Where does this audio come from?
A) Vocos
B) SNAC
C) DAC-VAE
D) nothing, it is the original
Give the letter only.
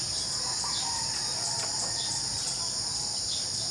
D